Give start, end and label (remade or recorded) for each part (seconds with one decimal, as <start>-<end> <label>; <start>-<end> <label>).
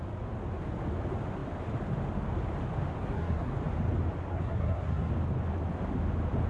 0.0-3.0 recorded; 3.0-3.5 remade; 3.5-4.3 recorded; 4.3-5.1 remade; 5.1-6.5 recorded